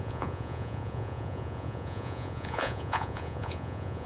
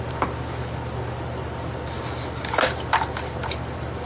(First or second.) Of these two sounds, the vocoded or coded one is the first